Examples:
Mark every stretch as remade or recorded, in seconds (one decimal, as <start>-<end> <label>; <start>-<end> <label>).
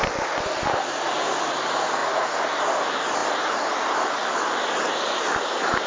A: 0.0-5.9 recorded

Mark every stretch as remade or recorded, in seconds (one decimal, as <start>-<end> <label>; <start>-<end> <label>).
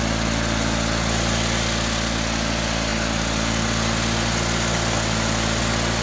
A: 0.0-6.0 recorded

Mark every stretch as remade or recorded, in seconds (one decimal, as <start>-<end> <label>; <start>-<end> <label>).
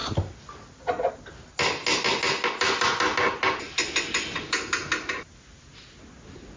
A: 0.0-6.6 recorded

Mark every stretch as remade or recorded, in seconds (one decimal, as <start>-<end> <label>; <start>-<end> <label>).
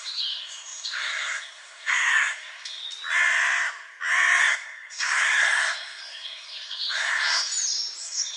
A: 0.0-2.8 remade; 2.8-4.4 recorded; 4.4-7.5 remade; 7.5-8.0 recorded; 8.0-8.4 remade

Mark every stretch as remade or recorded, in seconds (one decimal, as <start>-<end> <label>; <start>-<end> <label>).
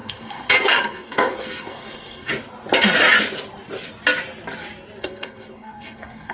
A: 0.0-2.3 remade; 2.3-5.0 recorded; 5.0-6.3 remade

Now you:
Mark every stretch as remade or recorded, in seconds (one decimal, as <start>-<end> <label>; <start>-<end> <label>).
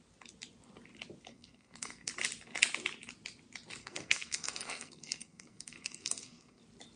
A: 0.0-1.3 recorded; 1.3-2.1 remade; 2.1-3.8 recorded; 3.8-6.6 remade; 6.6-7.0 recorded